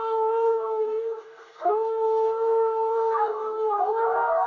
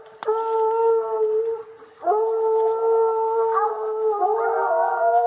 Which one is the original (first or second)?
second